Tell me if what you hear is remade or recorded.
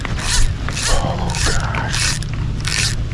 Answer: recorded